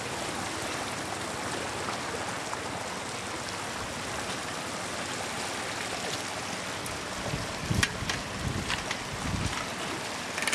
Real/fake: real